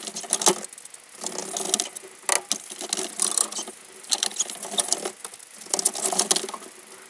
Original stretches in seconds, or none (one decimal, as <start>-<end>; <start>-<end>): 0.0-7.1